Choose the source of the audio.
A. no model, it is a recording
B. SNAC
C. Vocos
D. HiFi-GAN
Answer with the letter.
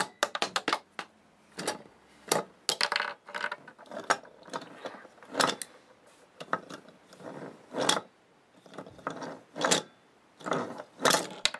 A